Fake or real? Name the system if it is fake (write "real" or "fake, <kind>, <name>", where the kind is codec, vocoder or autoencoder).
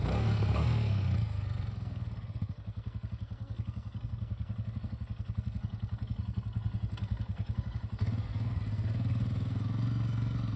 fake, codec, SNAC